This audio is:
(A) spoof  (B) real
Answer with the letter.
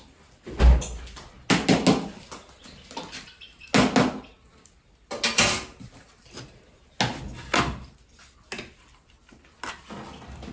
B